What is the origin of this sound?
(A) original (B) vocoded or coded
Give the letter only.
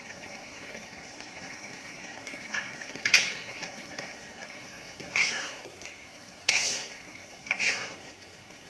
B